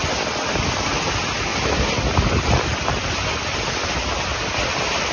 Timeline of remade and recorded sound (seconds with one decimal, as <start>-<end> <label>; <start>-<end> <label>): 0.0-5.1 recorded